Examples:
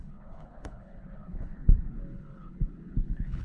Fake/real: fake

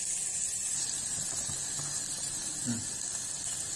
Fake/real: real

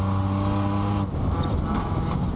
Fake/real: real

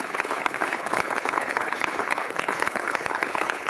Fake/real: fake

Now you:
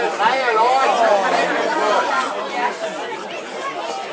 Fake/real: real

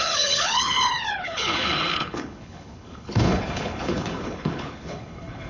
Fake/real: fake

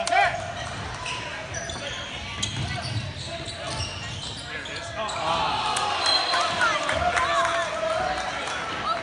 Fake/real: real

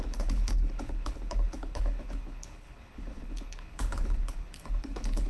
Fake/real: fake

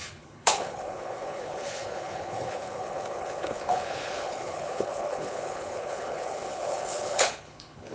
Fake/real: fake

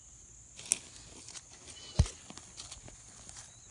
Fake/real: real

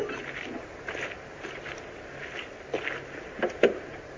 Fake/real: real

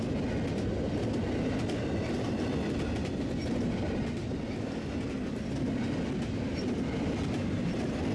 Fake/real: real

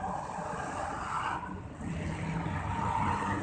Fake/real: real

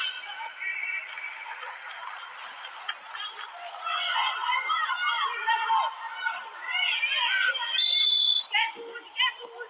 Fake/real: real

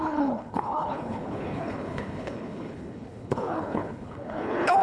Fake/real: fake